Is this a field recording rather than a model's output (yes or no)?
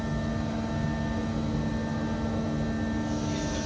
yes